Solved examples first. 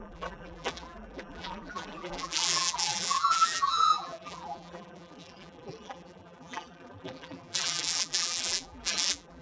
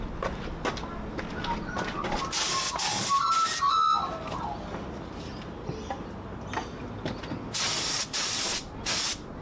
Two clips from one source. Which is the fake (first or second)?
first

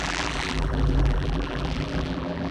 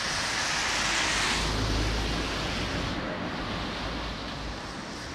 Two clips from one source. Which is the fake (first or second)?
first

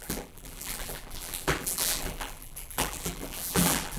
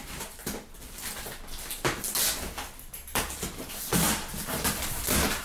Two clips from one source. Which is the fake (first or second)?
first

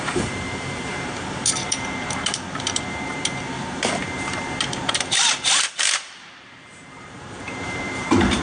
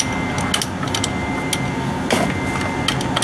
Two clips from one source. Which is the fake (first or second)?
first